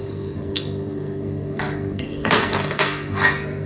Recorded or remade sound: remade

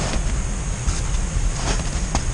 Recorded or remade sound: recorded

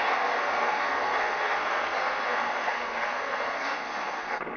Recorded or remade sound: remade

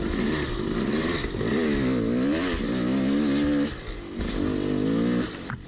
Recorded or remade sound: recorded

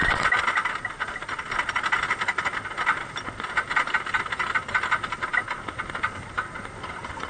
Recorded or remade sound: recorded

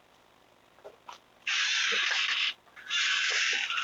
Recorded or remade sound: recorded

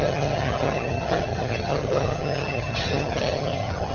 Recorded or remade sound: remade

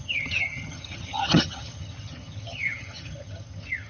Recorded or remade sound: remade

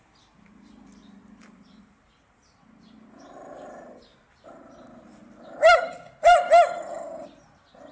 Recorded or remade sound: recorded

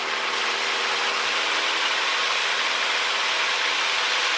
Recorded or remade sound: recorded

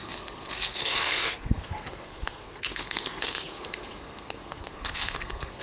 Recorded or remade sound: remade